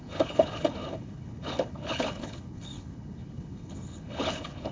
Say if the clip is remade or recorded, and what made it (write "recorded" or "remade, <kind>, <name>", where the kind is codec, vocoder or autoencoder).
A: remade, codec, HILCodec